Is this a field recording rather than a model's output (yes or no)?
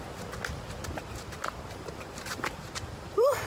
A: yes